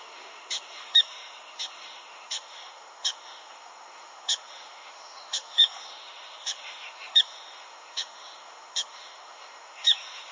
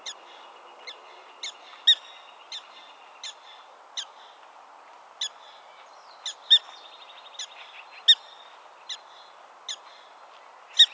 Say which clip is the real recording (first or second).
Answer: second